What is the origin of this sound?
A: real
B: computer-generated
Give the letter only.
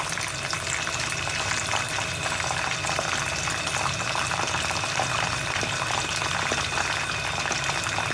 A